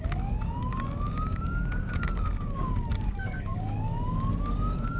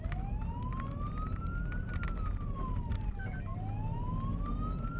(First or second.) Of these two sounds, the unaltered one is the second